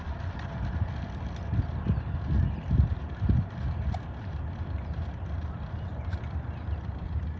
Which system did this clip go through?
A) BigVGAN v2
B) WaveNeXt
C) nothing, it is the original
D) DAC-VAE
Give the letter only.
A